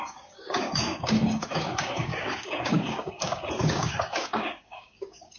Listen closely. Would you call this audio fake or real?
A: fake